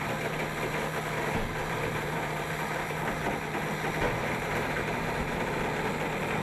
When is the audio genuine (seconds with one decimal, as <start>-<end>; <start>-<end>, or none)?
0.0-1.6; 3.0-4.2; 5.6-6.4